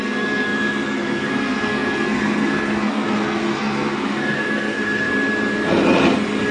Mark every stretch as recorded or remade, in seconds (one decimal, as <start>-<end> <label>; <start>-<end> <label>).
0.0-5.1 remade; 5.1-6.5 recorded